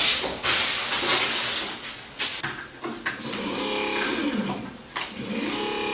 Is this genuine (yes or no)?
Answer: yes